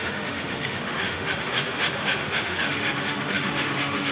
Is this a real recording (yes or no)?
no